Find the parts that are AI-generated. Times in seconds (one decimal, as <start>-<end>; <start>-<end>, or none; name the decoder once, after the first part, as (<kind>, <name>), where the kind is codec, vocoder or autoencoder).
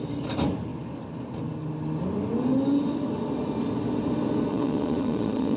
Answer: 4.5-5.6 (vocoder, Vocos)